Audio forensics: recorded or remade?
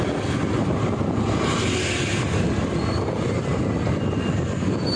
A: recorded